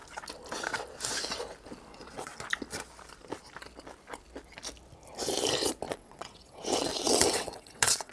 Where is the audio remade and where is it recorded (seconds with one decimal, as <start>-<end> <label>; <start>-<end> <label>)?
0.0-1.9 recorded; 1.9-2.3 remade; 2.3-5.9 recorded; 5.9-8.1 remade